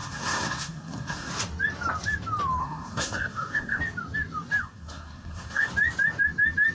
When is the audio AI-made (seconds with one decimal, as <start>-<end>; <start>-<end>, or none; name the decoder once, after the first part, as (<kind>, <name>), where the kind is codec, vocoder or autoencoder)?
0.0-1.3 (codec, SNAC); 2.6-3.8; 4.6-5.7